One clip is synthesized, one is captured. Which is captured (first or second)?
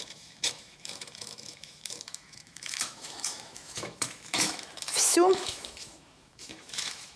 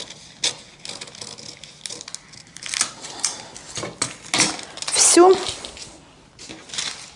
second